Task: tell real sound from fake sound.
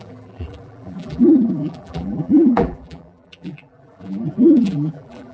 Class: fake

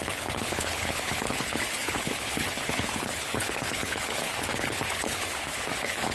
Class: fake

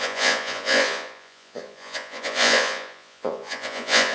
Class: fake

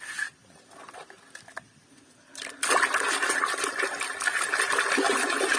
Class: real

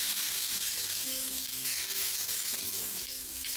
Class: fake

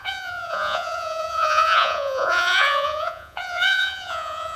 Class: fake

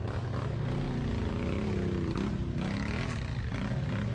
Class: real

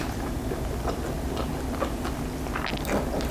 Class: real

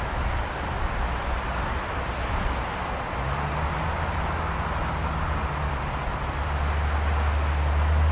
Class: real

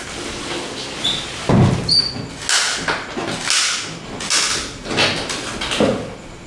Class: real